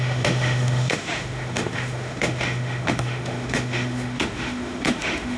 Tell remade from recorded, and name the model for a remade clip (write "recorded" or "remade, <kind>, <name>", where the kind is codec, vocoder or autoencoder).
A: remade, autoencoder, DAC-VAE